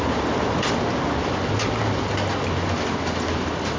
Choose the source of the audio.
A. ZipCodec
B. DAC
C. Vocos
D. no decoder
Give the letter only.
D